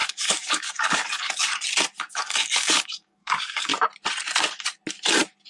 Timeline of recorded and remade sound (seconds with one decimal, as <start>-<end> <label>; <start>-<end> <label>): 0.0-1.5 remade; 1.5-2.1 recorded; 2.1-3.7 remade; 3.7-5.5 recorded